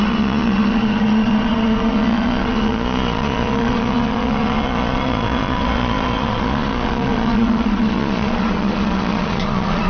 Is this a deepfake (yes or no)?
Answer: yes